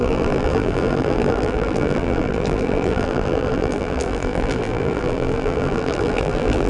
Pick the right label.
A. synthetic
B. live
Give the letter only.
A